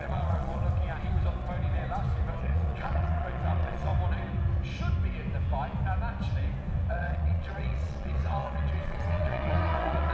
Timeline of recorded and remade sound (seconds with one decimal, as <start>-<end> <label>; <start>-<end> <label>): 0.0-0.6 remade; 0.6-2.4 recorded; 2.4-3.9 remade; 3.9-6.9 recorded; 6.9-10.1 remade